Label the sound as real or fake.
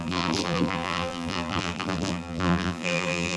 fake